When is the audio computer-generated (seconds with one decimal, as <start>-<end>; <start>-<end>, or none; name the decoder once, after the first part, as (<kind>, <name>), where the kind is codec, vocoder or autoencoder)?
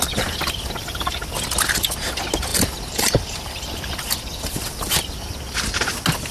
2.5-5.1 (vocoder, BigVGAN v2)